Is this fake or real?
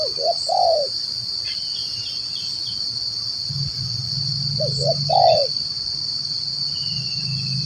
real